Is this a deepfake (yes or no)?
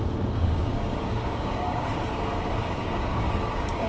yes